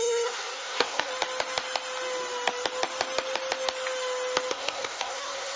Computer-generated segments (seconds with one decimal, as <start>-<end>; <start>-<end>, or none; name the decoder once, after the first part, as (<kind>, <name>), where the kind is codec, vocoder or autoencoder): 0.0-1.1 (codec, SNAC); 4.5-5.6